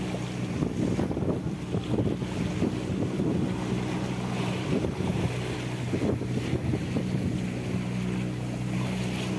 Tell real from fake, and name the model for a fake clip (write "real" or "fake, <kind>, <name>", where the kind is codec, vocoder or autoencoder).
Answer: real